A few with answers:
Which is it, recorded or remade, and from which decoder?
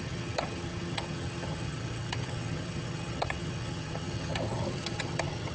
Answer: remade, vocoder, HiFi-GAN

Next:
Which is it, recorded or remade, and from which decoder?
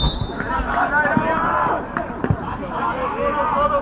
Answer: recorded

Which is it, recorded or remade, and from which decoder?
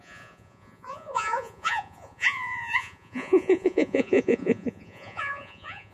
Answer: remade, vocoder, Vocos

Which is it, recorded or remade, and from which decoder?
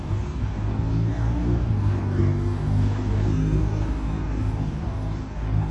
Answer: remade, codec, DAC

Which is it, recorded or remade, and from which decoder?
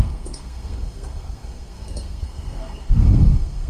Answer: remade, codec, SNAC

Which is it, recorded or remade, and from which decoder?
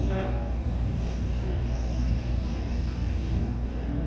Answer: remade, codec, DAC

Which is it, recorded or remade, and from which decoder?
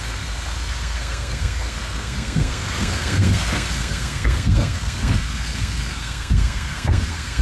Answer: remade, codec, SNAC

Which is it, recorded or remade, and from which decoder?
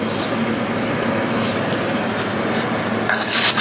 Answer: remade, vocoder, BigVGAN v2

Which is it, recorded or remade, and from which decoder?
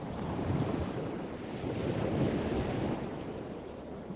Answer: recorded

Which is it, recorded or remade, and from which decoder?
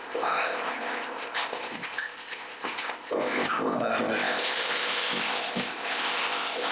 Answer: remade, codec, ZipCodec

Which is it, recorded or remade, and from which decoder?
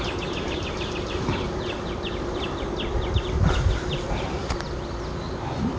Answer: recorded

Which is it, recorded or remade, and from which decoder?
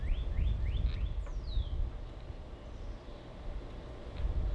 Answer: recorded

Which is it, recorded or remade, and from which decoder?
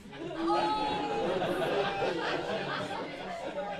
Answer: recorded